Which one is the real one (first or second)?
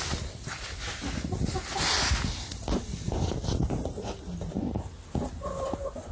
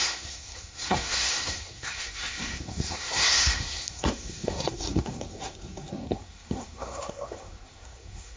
first